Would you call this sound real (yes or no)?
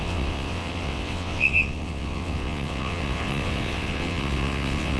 no